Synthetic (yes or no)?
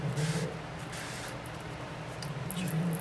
no